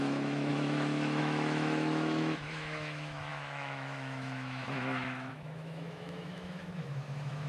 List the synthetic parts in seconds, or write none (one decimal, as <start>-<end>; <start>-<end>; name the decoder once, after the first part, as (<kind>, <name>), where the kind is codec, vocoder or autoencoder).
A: 0.0-7.5 (autoencoder, DAC-VAE)